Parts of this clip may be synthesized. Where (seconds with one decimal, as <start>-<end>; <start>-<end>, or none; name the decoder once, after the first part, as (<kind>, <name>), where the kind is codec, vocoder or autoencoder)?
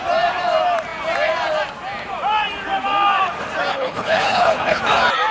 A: 3.7-4.8 (codec, HILCodec)